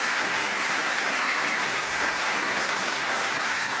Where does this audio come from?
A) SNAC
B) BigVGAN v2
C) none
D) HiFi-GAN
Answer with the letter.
A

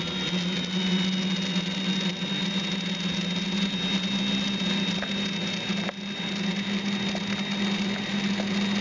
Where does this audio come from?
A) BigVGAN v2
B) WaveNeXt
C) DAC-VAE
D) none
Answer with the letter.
D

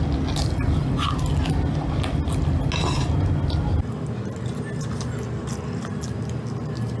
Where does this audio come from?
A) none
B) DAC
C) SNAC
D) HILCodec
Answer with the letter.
A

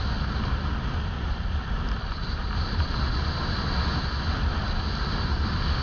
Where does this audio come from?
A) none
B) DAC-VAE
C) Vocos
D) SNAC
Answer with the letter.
A